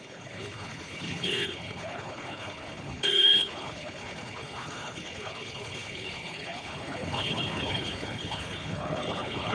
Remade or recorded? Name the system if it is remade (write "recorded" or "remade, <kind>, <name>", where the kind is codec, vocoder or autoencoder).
remade, codec, HILCodec